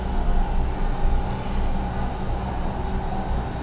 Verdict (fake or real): real